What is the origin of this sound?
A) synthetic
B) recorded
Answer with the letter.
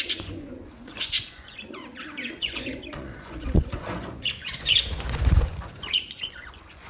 A